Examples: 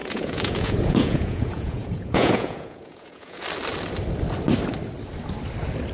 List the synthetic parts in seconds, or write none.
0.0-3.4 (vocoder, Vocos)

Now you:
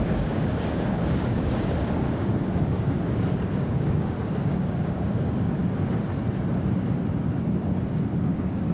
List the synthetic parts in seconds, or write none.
0.0-5.6 (codec, DAC); 8.2-8.7

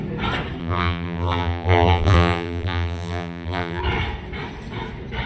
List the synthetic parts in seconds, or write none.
0.6-3.8 (vocoder, BigVGAN v2)

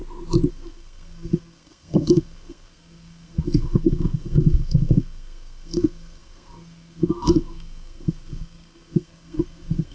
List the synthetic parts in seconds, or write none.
0.5-9.9 (codec, SNAC)

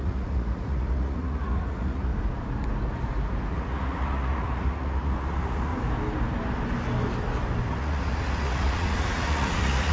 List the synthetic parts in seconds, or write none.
0.0-2.1 (vocoder, Vocos); 3.5-5.7; 7.7-9.9